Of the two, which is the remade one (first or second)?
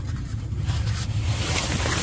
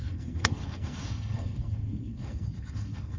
second